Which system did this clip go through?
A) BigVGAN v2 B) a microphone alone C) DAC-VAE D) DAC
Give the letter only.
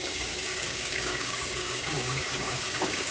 D